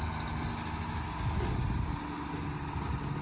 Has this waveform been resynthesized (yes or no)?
no